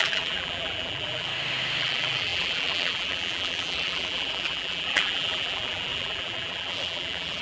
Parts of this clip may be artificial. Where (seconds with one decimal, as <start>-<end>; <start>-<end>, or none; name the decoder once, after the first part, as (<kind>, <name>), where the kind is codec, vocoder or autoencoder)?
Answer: 0.0-1.3 (vocoder, BigVGAN v2); 1.8-7.4